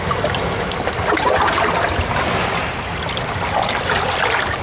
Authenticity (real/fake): real